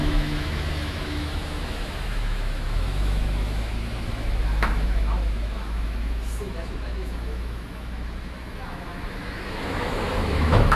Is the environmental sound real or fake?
fake